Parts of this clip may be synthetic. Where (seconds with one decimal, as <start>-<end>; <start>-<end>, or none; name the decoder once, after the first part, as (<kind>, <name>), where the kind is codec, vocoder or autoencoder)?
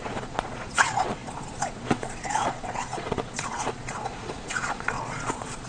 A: 0.0-5.7 (vocoder, Vocos)